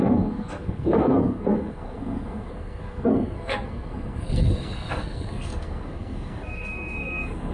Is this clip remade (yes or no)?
yes